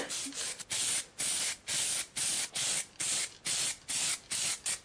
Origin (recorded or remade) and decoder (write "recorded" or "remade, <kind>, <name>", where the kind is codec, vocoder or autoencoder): recorded